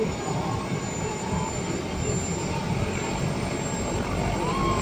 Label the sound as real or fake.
real